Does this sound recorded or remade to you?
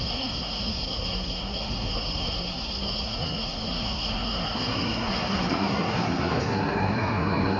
remade